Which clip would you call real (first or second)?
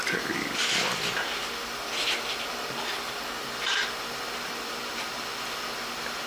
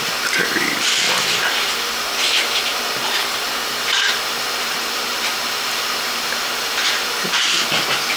first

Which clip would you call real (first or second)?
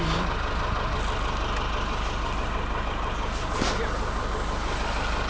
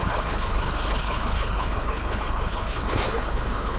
first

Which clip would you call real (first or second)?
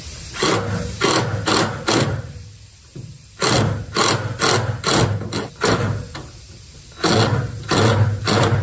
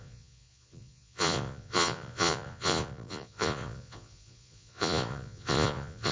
first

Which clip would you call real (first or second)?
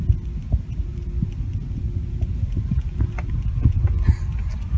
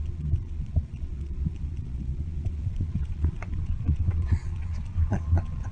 first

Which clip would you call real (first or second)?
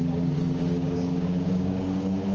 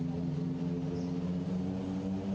second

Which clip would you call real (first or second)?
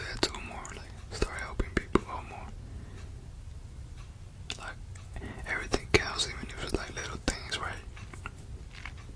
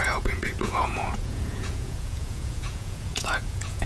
first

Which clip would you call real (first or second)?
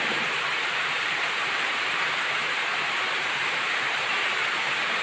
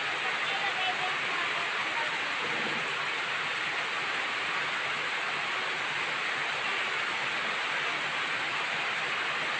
second